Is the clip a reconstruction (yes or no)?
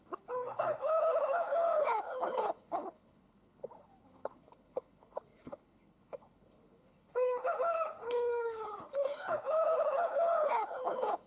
yes